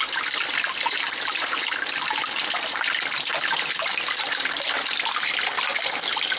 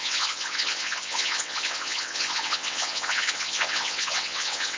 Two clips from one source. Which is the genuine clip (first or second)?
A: first